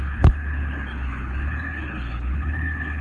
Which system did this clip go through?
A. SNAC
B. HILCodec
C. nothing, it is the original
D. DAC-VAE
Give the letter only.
B